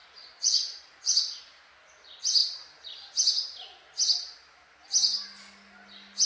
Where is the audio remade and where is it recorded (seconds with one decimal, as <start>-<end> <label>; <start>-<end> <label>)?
0.0-1.4 remade; 1.4-6.3 recorded